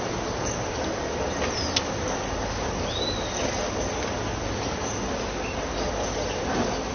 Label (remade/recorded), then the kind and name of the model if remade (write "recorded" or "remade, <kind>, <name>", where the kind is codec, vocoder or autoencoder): recorded